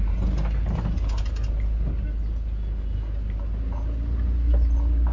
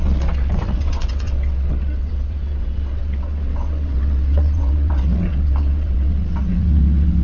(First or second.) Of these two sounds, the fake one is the second